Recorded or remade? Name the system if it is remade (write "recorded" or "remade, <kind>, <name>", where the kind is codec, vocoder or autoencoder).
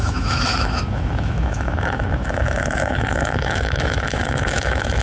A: remade, autoencoder, DAC-VAE